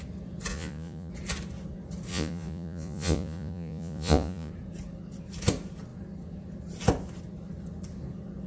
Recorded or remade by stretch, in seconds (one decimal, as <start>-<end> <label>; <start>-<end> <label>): 0.0-0.5 recorded; 0.5-1.1 remade; 1.1-2.1 recorded; 2.1-4.5 remade; 4.5-8.5 recorded